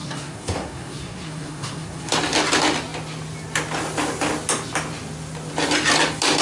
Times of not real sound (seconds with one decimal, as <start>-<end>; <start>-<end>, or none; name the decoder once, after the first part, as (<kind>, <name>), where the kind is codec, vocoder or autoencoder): 0.0-2.1 (codec, SNAC)